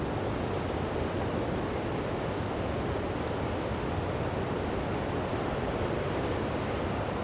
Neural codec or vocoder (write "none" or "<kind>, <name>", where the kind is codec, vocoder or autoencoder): none